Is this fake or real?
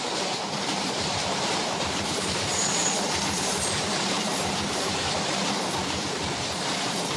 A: fake